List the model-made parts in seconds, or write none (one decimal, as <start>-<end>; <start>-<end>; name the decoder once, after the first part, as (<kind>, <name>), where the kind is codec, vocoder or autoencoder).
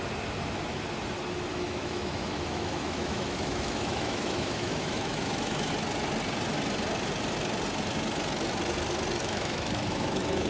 1.5-5.7 (autoencoder, DAC-VAE); 9.2-10.5